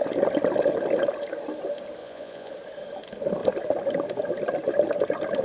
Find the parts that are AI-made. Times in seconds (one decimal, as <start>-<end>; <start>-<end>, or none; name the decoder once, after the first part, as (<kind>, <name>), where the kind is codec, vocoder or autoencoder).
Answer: 2.0-2.5 (vocoder, Vocos)